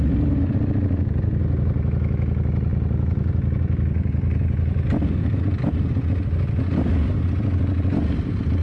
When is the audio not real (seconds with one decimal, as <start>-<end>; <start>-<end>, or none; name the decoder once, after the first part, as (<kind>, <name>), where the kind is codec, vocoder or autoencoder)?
none